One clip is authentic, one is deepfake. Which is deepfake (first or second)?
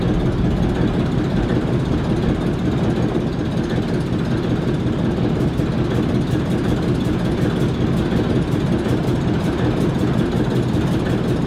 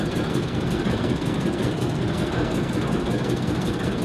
second